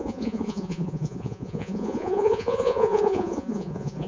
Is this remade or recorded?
remade